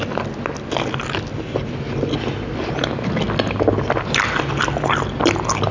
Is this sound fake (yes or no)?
no